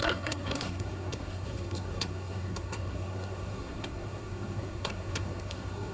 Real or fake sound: fake